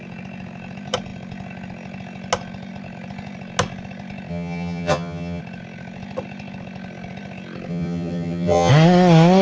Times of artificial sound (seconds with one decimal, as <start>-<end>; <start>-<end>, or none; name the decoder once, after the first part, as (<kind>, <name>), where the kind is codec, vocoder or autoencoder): 4.3-5.4 (vocoder, HiFi-GAN); 7.7-8.7